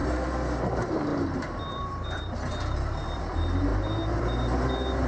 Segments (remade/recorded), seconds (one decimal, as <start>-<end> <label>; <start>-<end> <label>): 0.0-0.7 recorded; 0.7-5.1 remade